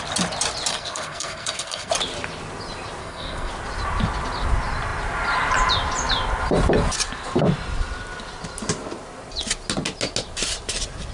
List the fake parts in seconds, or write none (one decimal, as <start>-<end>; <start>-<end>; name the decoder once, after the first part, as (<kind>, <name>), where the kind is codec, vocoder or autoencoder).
0.7-1.9 (codec, SNAC); 3.0-3.5